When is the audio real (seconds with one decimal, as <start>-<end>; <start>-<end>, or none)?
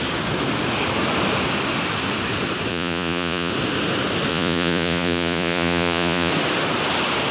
0.0-2.7; 3.5-4.3; 6.3-7.3